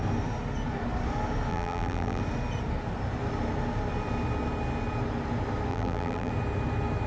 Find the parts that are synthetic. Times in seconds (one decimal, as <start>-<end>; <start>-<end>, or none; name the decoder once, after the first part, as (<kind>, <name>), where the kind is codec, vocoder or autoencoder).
1.5-2.2 (vocoder, BigVGAN v2); 5.7-6.3